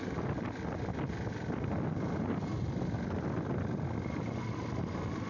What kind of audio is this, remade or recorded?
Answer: recorded